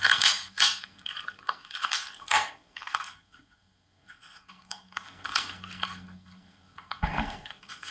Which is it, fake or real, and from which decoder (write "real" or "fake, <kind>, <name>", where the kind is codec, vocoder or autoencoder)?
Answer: fake, codec, SNAC